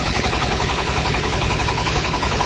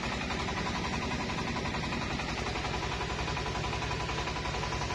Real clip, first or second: second